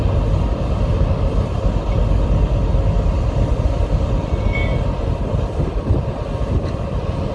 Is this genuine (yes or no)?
yes